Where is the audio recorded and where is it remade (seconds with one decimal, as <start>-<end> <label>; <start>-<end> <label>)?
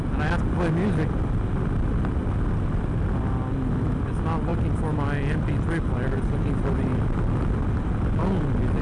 0.0-8.8 recorded